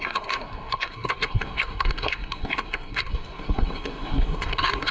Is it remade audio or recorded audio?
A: remade